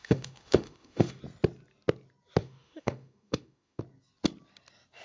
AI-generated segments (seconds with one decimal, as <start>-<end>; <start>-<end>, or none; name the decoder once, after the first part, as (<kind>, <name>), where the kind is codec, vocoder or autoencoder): 0.0-1.2 (autoencoder, DAC-VAE); 2.4-3.8